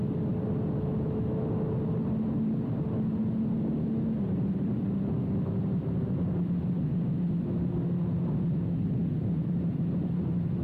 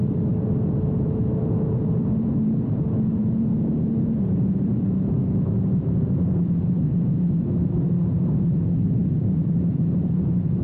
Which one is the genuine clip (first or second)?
first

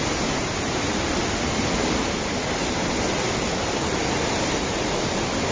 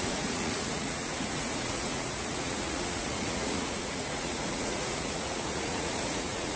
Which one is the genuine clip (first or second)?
first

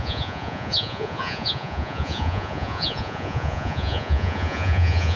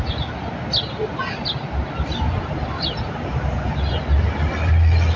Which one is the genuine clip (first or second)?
second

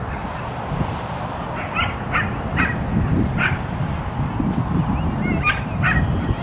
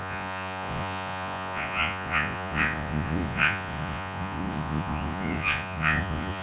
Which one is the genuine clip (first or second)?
first